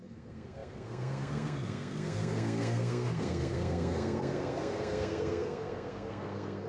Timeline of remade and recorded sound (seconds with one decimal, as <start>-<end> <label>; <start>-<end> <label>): 0.0-6.7 remade